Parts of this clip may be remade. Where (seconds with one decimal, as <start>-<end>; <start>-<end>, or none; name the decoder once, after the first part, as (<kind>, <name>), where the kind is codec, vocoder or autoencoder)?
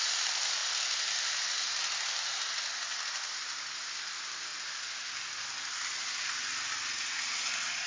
none